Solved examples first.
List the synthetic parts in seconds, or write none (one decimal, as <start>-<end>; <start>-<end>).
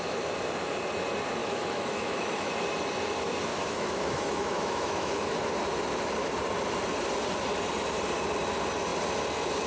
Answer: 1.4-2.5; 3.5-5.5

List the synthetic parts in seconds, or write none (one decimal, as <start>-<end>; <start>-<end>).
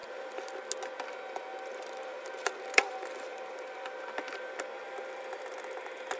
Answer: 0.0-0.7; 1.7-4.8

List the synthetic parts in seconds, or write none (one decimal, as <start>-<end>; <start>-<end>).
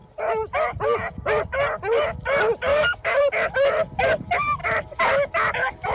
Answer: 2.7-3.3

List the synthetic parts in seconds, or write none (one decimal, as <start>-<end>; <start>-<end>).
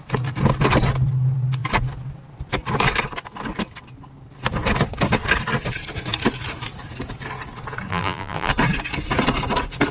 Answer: 7.9-8.5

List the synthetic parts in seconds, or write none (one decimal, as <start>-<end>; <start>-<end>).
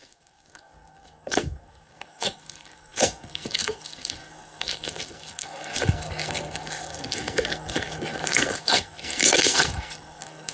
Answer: 0.0-10.5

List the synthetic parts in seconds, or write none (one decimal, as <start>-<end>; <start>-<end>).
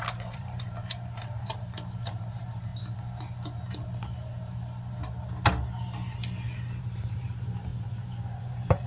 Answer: 0.0-2.7; 6.8-8.9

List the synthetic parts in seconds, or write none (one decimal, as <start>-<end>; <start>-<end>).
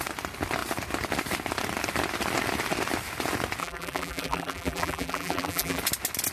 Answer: 3.6-5.8